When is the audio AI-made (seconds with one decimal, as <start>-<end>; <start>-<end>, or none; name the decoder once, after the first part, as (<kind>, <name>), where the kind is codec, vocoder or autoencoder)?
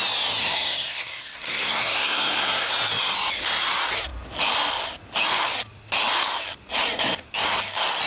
0.4-2.7 (codec, SNAC)